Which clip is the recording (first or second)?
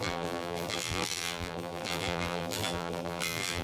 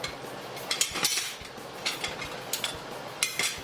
second